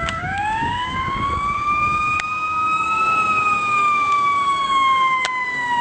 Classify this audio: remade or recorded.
remade